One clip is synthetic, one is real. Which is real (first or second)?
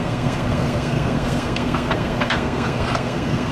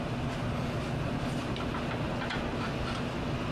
second